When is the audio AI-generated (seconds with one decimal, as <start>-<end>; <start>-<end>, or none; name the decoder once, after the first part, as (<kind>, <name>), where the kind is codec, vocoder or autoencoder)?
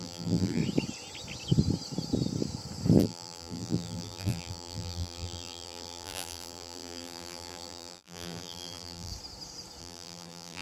0.0-0.6 (vocoder, BigVGAN v2); 3.0-9.1; 9.8-10.6